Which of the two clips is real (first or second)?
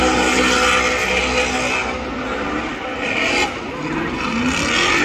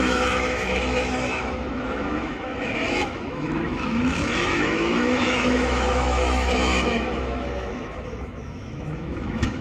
first